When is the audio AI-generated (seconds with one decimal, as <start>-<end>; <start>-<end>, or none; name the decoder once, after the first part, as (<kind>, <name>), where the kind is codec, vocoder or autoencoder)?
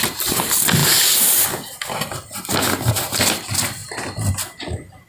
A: none